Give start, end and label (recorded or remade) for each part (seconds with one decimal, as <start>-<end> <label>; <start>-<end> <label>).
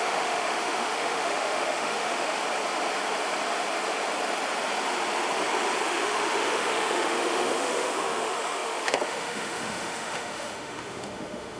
0.0-2.4 remade; 2.4-5.8 recorded; 5.8-11.6 remade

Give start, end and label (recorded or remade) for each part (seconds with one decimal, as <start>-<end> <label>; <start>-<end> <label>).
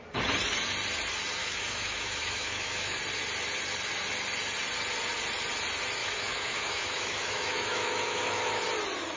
0.0-1.4 recorded; 1.4-3.0 remade; 3.0-6.0 recorded; 6.0-8.6 remade; 8.6-9.2 recorded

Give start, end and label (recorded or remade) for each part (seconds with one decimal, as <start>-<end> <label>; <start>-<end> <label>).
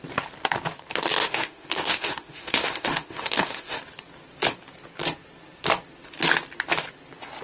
0.0-1.2 recorded; 1.2-3.8 remade; 3.8-7.4 recorded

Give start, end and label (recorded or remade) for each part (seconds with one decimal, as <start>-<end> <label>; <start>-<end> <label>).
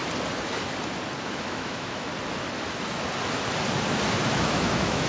0.0-1.2 recorded; 1.2-2.1 remade; 2.1-4.2 recorded; 4.2-5.1 remade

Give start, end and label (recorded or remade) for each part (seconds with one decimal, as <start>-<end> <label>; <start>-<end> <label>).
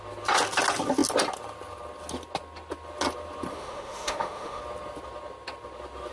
0.0-3.5 recorded; 3.5-4.6 remade; 4.6-6.1 recorded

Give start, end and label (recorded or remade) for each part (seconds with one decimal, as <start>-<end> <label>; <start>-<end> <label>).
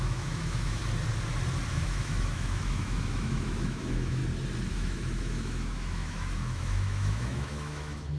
0.0-0.8 remade; 0.8-1.7 recorded; 1.7-4.2 remade; 4.2-4.7 recorded; 4.7-8.2 remade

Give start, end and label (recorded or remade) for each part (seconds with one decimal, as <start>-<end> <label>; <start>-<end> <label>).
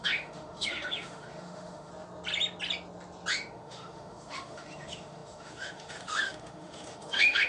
0.0-1.9 remade; 1.9-3.3 recorded; 3.3-7.5 remade